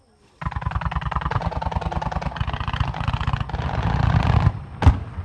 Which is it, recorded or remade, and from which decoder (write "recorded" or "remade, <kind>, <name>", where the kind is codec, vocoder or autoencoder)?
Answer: recorded